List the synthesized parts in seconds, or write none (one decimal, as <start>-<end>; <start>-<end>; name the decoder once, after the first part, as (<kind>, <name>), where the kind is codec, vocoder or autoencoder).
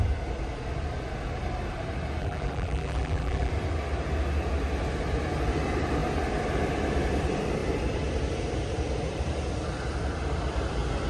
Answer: 2.2-3.5 (vocoder, BigVGAN v2)